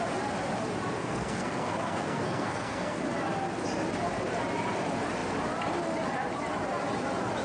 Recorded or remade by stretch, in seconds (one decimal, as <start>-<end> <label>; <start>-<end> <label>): 0.0-1.0 recorded; 1.0-3.0 remade; 3.0-7.4 recorded